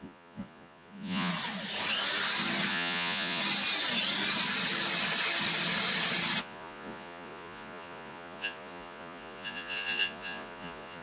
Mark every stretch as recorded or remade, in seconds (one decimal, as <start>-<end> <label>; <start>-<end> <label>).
0.0-1.3 remade; 1.3-2.7 recorded; 2.7-3.4 remade; 3.4-6.4 recorded; 6.4-11.0 remade